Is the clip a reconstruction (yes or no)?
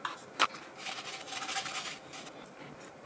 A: no